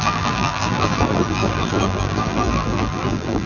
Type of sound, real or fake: fake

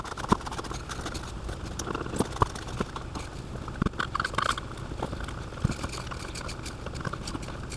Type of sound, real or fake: real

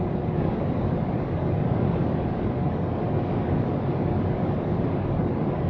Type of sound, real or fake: fake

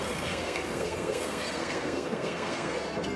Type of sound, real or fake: fake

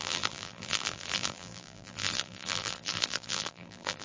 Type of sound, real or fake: fake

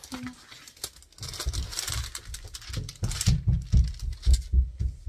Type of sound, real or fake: real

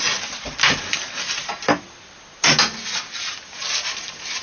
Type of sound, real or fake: real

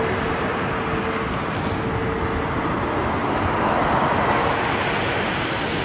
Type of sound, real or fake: real